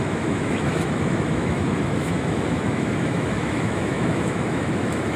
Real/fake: fake